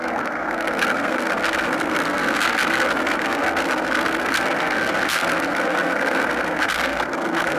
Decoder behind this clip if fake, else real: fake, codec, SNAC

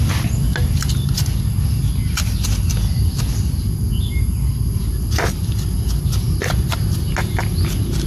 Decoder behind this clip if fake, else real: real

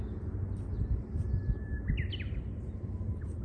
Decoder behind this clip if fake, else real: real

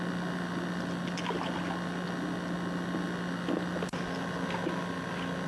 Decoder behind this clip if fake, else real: real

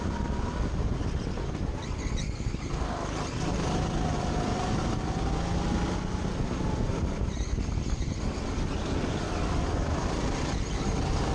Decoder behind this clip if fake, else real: real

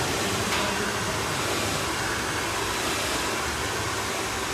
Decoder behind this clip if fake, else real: real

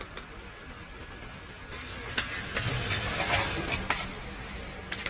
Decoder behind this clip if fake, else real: real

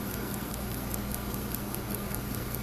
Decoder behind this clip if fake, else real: fake, codec, SNAC